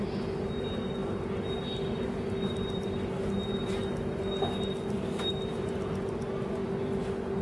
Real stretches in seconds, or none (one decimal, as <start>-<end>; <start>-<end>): 0.0-7.4